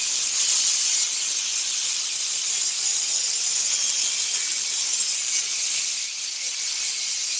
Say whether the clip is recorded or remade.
recorded